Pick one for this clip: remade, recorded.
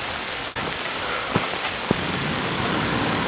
remade